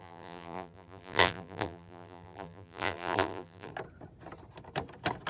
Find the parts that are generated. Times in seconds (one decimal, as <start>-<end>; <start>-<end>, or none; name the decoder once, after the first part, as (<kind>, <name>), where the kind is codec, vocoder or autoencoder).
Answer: 0.0-3.7 (vocoder, BigVGAN v2)